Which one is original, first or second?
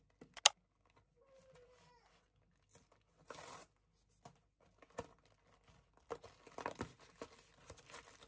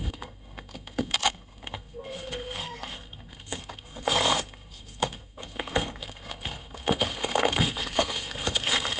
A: first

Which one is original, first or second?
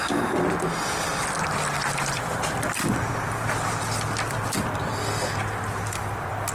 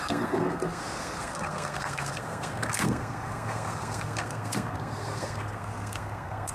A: first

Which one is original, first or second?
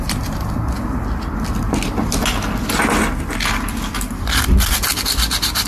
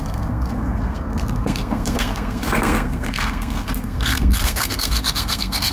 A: first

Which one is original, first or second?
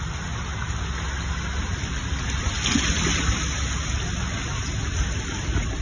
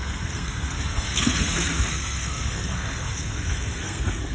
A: first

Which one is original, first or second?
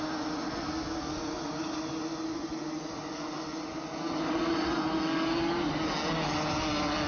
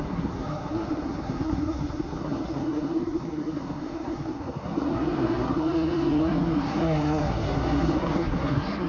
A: first